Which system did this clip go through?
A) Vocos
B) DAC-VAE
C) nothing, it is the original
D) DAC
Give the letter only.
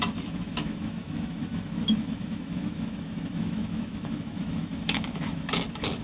B